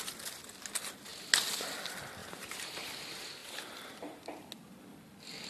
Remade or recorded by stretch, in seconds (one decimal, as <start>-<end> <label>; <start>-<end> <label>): 0.0-2.2 recorded; 2.2-2.9 remade; 2.9-3.4 recorded; 3.4-4.3 remade; 4.3-5.5 recorded